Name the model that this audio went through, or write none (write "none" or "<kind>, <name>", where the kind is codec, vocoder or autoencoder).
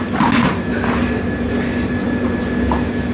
none